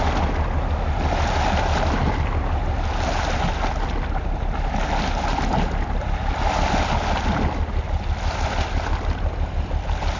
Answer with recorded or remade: recorded